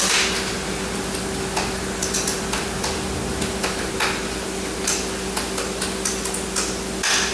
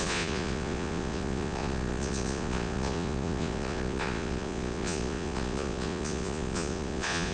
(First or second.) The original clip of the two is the first